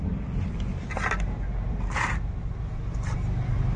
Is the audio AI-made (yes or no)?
no